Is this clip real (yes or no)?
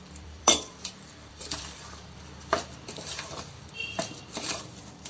no